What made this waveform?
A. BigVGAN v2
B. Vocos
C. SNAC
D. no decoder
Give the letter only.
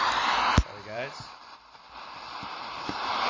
A